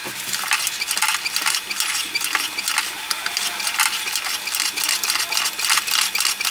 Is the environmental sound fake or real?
real